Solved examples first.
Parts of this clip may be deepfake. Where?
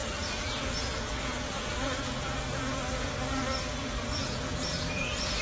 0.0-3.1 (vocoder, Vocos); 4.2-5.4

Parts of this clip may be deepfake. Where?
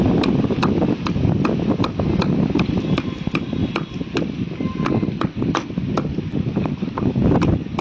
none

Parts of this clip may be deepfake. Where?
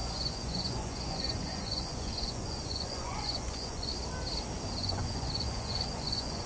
0.0-3.9 (vocoder, Vocos); 4.8-6.5